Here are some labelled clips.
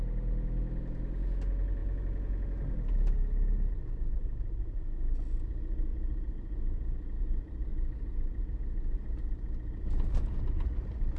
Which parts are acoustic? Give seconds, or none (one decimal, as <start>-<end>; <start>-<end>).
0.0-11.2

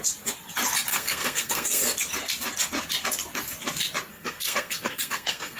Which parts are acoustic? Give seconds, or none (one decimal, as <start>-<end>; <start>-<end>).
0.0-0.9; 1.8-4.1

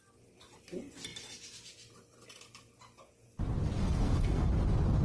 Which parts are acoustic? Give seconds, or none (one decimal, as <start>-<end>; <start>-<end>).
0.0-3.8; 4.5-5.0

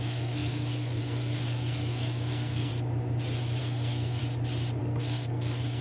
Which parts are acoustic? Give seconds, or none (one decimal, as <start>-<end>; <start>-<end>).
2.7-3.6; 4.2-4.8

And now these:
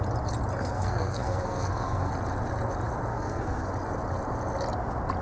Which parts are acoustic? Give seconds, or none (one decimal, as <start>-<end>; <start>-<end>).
0.0-0.6; 2.1-3.1; 3.7-5.2

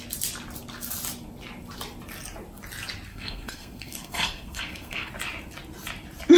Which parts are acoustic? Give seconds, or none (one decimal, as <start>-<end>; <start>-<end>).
0.0-3.1; 5.1-6.4